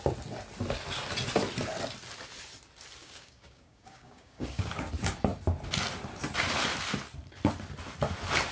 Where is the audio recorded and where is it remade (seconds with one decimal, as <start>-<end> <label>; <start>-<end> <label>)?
0.0-3.0 recorded; 3.0-4.7 remade; 4.7-8.5 recorded